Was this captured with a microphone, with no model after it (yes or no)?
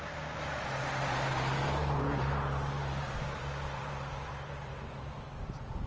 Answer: no